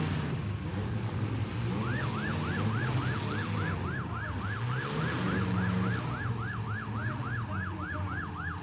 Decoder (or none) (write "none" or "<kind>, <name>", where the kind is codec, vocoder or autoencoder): none